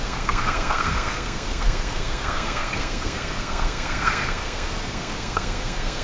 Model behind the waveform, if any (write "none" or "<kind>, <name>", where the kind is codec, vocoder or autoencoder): codec, SNAC